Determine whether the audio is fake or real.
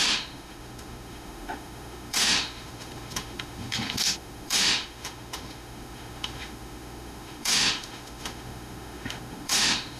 fake